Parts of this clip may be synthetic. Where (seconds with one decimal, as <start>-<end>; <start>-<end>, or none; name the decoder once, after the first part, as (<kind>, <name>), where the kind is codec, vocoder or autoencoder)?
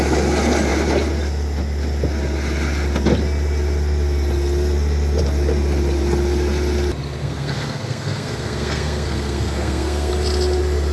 7.2-10.1 (codec, SNAC)